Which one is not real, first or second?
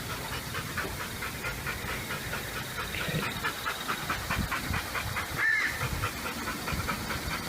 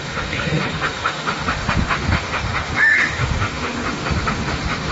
second